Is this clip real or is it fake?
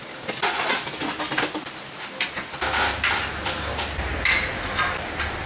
real